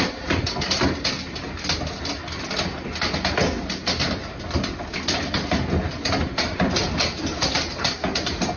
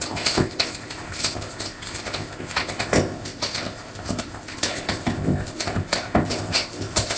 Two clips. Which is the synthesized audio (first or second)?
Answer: second